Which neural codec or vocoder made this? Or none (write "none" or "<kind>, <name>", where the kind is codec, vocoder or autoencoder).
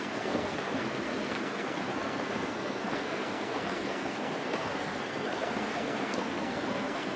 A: codec, SNAC